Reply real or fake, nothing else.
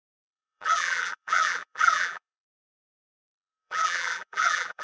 fake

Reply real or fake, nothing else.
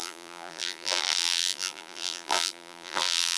fake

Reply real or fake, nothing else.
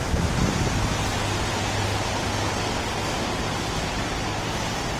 real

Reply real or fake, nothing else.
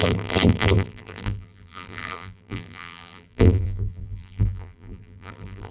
fake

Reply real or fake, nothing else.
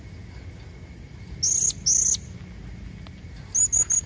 real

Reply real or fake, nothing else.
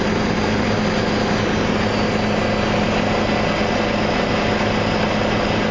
real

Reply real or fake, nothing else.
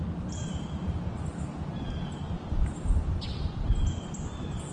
real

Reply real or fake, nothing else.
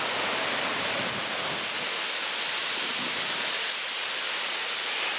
real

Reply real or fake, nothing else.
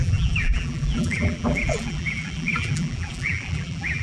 fake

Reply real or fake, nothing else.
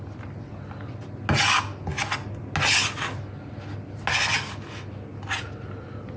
real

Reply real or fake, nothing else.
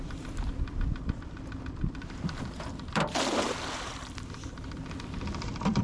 fake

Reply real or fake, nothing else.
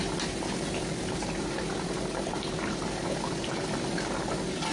real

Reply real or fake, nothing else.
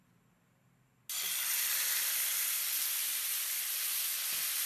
real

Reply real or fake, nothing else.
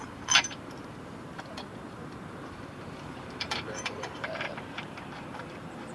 fake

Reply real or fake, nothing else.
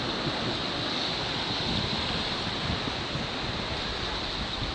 real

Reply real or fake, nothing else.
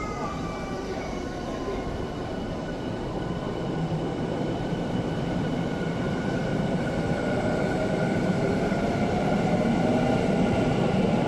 fake